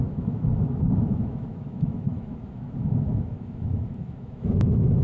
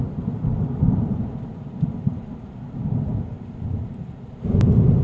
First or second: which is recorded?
second